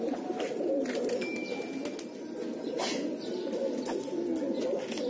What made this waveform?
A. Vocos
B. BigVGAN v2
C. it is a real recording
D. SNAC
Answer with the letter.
C